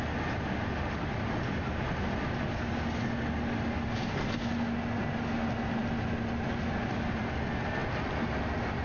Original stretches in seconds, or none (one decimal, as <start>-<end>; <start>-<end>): 0.0-8.8